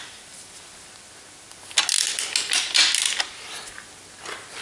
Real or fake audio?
real